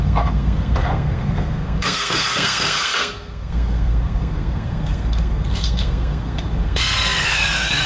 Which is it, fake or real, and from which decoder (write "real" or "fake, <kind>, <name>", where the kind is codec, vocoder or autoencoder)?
fake, codec, SNAC